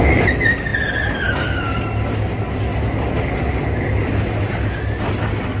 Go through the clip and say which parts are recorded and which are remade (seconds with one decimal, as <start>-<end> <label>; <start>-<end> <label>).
0.0-5.6 recorded

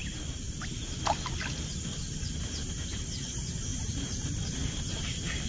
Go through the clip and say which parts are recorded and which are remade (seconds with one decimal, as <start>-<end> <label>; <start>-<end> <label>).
0.0-0.6 remade; 0.6-3.7 recorded; 3.7-5.5 remade

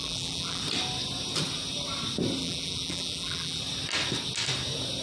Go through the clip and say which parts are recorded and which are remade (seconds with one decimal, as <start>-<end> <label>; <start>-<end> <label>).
0.0-0.6 remade; 0.6-2.4 recorded; 2.4-3.6 remade; 3.6-5.0 recorded

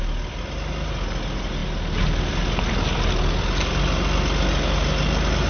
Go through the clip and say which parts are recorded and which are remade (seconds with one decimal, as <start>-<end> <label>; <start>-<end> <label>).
0.0-5.5 recorded

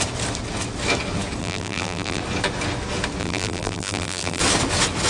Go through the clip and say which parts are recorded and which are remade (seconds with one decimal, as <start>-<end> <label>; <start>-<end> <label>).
0.0-1.4 recorded; 1.4-2.2 remade; 2.2-3.2 recorded; 3.2-4.4 remade; 4.4-5.1 recorded

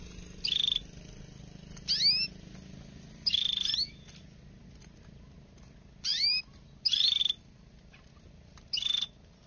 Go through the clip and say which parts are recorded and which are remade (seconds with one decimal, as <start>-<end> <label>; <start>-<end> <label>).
0.0-6.1 recorded; 6.1-6.8 remade; 6.8-7.2 recorded; 7.2-8.1 remade; 8.1-9.5 recorded